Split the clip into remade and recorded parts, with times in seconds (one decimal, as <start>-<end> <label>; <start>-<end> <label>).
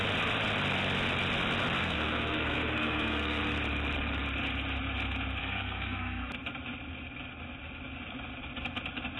0.0-1.8 recorded; 1.8-3.4 remade; 3.4-5.4 recorded; 5.4-6.3 remade; 6.3-9.2 recorded